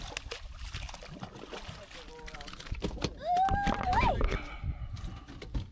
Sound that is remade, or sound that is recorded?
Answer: recorded